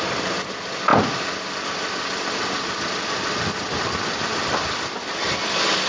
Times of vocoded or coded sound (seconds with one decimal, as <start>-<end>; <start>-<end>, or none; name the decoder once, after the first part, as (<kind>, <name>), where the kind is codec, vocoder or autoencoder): none